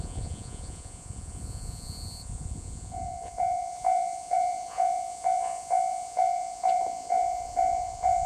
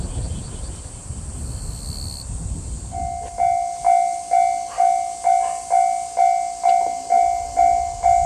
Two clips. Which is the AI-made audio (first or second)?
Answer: first